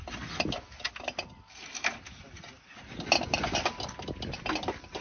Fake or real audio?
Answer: real